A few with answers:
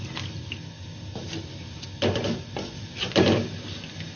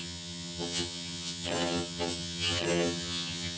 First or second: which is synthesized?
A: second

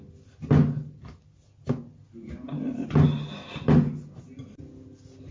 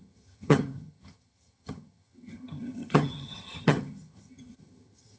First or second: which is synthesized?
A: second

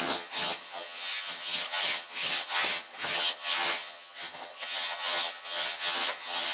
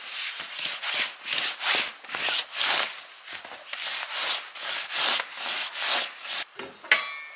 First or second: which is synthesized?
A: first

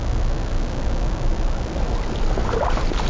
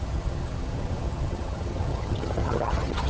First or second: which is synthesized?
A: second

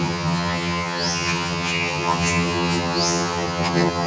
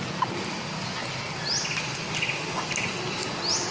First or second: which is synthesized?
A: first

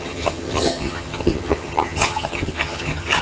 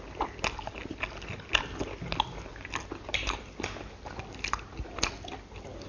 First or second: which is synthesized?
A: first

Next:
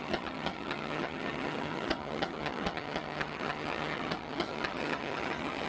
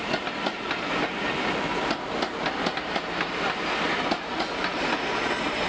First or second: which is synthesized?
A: first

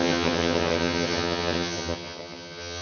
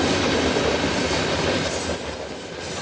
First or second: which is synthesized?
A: first